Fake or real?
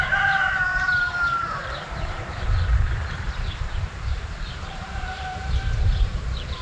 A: fake